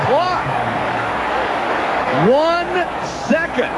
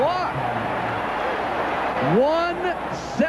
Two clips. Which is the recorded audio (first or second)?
second